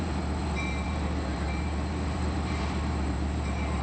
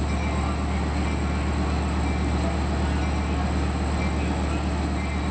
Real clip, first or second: second